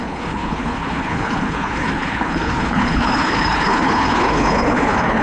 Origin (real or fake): fake